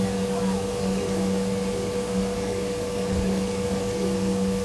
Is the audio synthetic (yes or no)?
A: yes